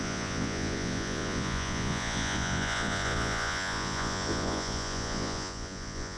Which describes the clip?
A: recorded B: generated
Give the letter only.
B